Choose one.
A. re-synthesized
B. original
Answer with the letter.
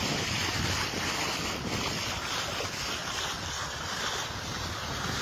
B